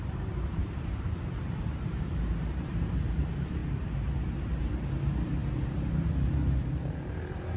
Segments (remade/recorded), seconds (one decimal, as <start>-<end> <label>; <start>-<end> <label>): 0.0-3.6 remade; 3.6-4.4 recorded; 4.4-7.6 remade

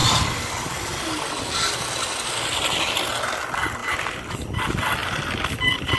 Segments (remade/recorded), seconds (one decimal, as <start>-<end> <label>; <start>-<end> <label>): 0.0-3.8 recorded; 3.8-4.6 remade; 4.6-6.0 recorded

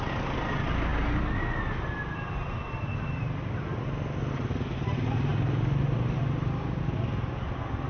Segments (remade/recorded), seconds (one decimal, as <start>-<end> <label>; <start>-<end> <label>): 0.0-7.9 recorded

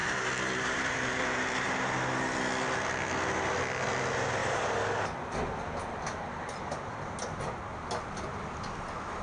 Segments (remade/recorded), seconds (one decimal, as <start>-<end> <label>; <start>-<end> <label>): 0.0-1.7 remade; 1.7-9.2 recorded

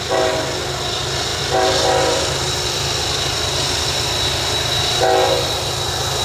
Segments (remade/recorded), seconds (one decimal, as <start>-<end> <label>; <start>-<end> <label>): 0.0-1.3 recorded; 1.3-5.0 remade; 5.0-6.2 recorded

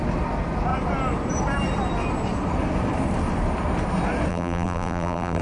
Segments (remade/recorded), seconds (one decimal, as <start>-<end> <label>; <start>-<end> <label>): 0.0-4.3 recorded; 4.3-5.4 remade

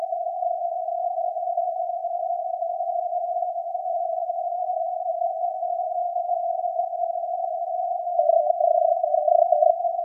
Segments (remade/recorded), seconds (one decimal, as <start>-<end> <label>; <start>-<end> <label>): 0.0-3.8 recorded; 3.8-5.3 remade; 5.3-10.0 recorded

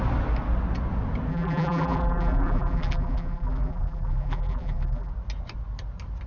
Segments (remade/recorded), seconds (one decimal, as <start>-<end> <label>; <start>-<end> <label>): 0.0-1.3 recorded; 1.3-5.1 remade; 5.1-6.3 recorded